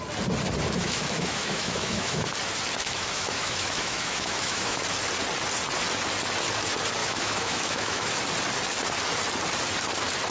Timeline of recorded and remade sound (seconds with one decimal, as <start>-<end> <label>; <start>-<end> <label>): 0.0-0.8 recorded; 0.8-2.3 remade; 2.3-2.8 recorded; 2.8-4.8 remade; 4.8-7.0 recorded; 7.0-8.2 remade; 8.2-10.3 recorded